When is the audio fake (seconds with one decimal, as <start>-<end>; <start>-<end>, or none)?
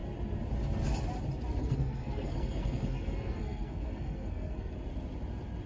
1.6-4.7